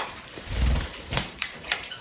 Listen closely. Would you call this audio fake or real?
fake